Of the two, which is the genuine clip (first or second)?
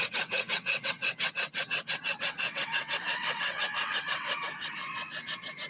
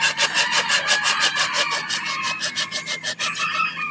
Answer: second